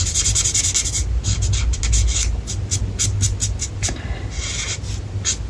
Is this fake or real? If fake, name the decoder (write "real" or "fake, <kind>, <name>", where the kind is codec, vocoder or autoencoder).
real